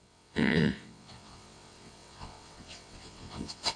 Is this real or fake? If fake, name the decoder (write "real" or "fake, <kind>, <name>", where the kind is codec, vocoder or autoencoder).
fake, vocoder, WaveNeXt